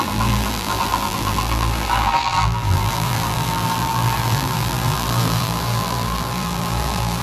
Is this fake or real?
fake